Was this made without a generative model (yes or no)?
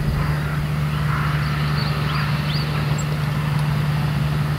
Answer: yes